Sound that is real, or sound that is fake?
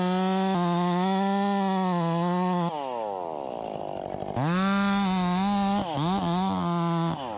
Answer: real